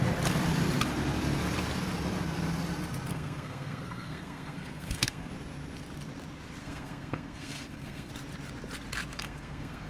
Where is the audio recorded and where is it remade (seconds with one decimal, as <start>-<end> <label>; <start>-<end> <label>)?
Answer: 0.0-3.1 recorded; 3.1-5.3 remade; 5.3-6.6 recorded; 6.6-8.1 remade; 8.1-9.1 recorded; 9.1-9.9 remade

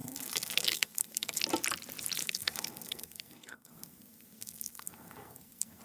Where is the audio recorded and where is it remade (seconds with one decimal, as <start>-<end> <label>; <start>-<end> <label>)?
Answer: 0.0-1.4 remade; 1.4-2.2 recorded; 2.2-5.8 remade

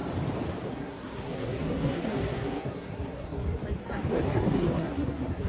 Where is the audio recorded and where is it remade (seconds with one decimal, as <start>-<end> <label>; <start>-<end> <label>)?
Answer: 0.0-0.7 recorded; 0.7-3.6 remade; 3.6-4.1 recorded; 4.1-5.5 remade

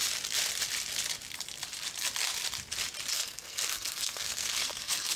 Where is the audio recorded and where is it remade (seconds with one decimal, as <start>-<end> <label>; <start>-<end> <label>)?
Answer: 0.0-3.1 recorded; 3.1-5.2 remade

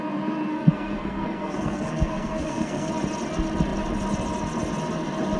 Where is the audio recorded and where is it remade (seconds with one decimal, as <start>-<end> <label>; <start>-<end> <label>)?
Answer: 0.0-0.5 recorded; 0.5-2.9 remade; 2.9-5.4 recorded

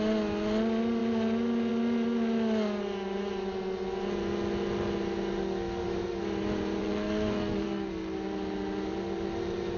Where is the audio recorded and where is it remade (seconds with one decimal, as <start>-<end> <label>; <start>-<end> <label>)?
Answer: 0.0-6.8 recorded; 6.8-7.9 remade; 7.9-9.8 recorded

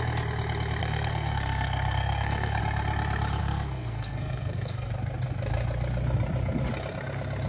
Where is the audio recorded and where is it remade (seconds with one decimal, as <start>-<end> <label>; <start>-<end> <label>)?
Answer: 0.0-0.8 recorded; 0.8-2.6 remade; 2.6-3.4 recorded; 3.4-4.9 remade; 4.9-7.5 recorded